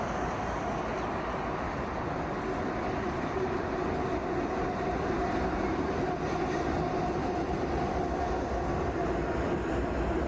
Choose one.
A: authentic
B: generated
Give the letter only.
A